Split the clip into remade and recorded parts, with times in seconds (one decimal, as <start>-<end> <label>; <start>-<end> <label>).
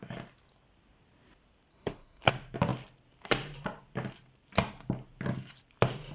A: 0.0-1.7 recorded; 1.7-2.3 remade; 2.3-6.1 recorded